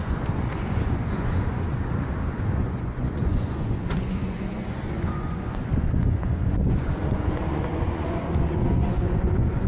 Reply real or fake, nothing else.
fake